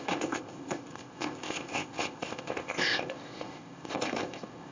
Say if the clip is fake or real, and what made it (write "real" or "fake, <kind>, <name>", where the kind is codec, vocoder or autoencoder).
fake, codec, ZipCodec